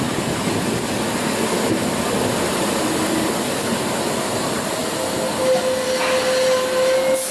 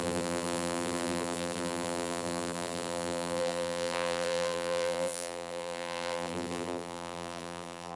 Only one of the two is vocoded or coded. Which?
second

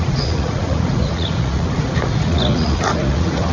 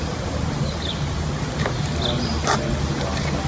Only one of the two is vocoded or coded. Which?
first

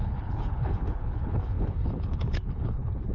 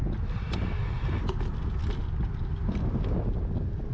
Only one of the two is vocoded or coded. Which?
first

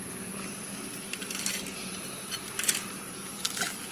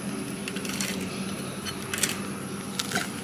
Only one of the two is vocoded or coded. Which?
first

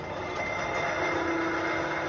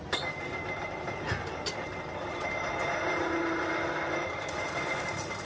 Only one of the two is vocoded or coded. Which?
second